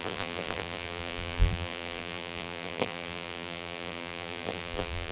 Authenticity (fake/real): fake